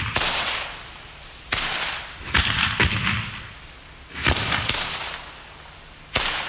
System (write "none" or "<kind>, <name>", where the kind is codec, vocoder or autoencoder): none